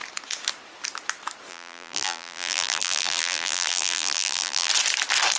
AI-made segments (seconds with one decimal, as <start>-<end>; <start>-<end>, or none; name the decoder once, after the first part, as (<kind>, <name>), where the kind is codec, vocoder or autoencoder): 1.5-4.7 (vocoder, BigVGAN v2)